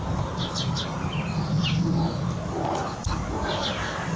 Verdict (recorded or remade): recorded